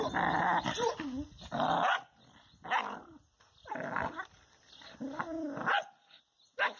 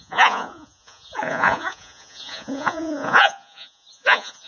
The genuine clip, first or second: first